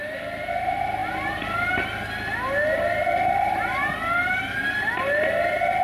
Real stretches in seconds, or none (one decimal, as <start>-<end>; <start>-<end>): 0.0-5.8